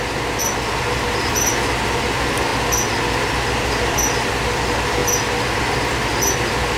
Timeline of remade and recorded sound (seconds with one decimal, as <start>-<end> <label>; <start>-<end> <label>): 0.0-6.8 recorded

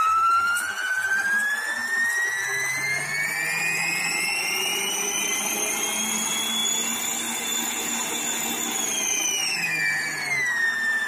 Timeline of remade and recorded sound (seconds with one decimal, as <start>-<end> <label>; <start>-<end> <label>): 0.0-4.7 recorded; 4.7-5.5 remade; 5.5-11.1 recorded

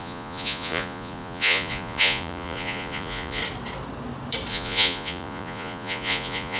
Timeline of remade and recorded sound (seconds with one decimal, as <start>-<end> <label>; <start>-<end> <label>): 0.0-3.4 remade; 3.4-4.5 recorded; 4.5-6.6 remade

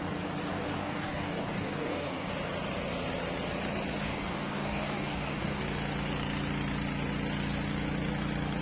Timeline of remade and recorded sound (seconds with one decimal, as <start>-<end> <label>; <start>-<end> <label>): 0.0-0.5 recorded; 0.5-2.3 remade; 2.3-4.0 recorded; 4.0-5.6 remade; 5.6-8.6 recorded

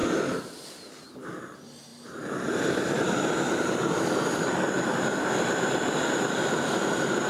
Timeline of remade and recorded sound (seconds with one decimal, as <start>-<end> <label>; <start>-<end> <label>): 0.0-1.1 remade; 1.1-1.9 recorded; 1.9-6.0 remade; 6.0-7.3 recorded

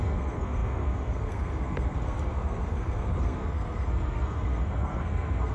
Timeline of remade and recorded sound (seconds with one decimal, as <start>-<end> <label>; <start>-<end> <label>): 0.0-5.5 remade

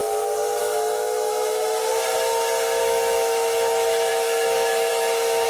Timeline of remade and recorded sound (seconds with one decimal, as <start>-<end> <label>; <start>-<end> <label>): 0.0-0.6 recorded; 0.6-1.9 remade; 1.9-2.8 recorded; 2.8-5.5 remade